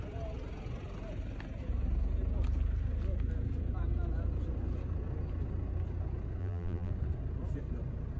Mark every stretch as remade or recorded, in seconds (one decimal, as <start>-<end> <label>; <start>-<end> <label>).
0.0-6.4 recorded; 6.4-6.9 remade; 6.9-8.2 recorded